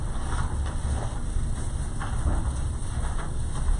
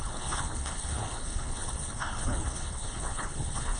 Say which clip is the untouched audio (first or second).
first